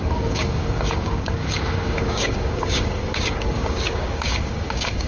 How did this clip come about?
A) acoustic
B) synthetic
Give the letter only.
B